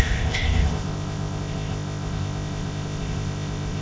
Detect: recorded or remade remade